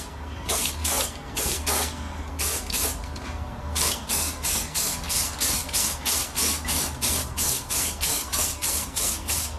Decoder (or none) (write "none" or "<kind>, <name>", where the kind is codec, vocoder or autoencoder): codec, SNAC